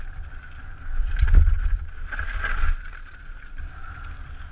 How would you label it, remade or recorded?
recorded